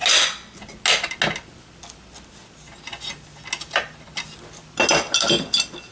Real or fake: real